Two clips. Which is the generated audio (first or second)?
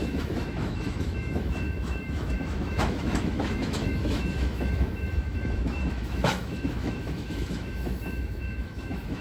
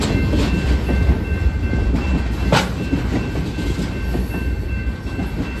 first